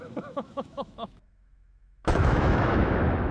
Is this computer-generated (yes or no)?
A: yes